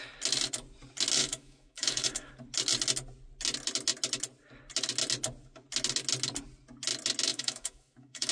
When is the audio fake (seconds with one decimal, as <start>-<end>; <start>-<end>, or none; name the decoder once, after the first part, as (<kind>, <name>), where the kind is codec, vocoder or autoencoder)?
1.2-2.3 (autoencoder, DAC-VAE); 7.3-8.3